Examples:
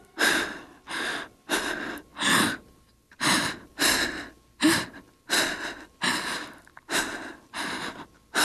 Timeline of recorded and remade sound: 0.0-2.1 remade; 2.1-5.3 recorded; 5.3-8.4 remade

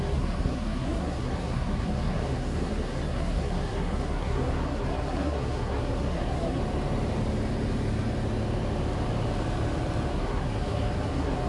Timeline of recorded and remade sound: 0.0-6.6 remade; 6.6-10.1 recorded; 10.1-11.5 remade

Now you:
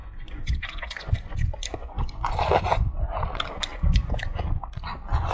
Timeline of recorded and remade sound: 0.0-2.3 remade; 2.3-3.7 recorded; 3.7-4.4 remade; 4.4-5.3 recorded

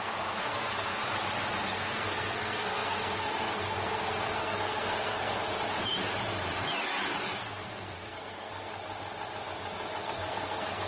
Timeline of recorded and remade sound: 0.0-1.0 remade; 1.0-1.6 recorded; 1.6-5.4 remade; 5.4-7.4 recorded; 7.4-8.7 remade; 8.7-10.0 recorded; 10.0-10.9 remade